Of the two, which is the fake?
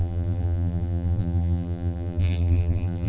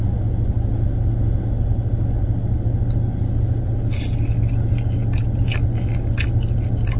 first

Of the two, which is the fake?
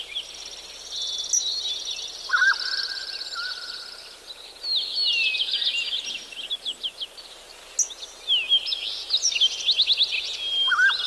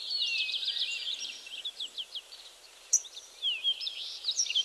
second